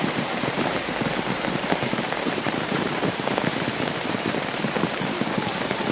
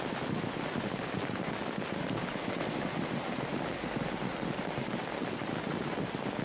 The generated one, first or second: first